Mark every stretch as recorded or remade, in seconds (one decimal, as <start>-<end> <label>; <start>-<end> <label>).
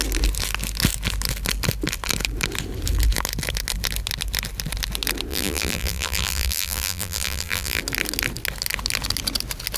0.0-5.3 recorded; 5.3-7.8 remade; 7.8-9.8 recorded